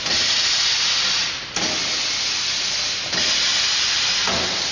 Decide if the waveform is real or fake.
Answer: real